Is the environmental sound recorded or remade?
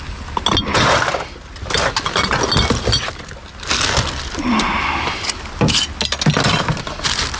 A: recorded